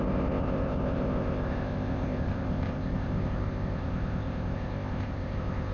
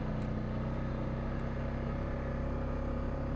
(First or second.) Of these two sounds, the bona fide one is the second